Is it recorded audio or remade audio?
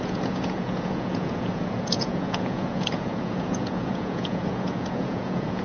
remade